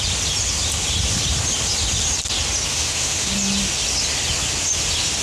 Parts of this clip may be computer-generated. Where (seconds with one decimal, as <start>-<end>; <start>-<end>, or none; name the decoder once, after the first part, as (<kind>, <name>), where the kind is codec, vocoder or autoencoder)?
2.7-3.3 (autoencoder, DAC-VAE)